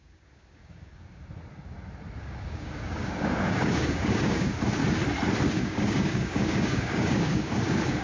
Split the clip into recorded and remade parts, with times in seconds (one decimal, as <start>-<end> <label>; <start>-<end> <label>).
0.0-1.2 remade; 1.2-2.2 recorded; 2.2-4.8 remade; 4.8-5.5 recorded; 5.5-8.0 remade